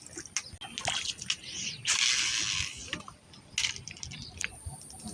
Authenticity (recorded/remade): recorded